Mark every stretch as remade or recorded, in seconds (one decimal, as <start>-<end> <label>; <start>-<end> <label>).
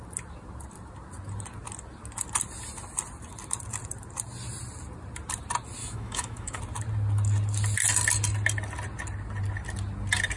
0.0-5.8 recorded; 5.8-6.6 remade; 6.6-10.4 recorded